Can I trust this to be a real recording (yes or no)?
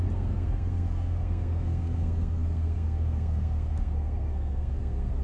no